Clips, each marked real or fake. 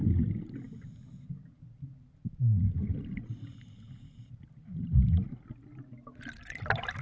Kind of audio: real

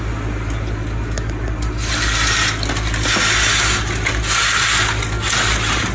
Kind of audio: real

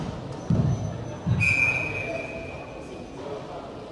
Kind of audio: real